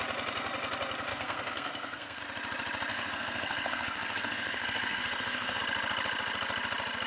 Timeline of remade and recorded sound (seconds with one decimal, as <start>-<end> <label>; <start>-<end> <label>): 0.0-1.1 recorded; 1.1-2.2 remade; 2.2-2.9 recorded; 2.9-5.6 remade; 5.6-7.1 recorded